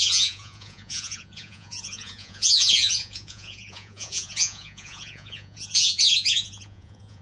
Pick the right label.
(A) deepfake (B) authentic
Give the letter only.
A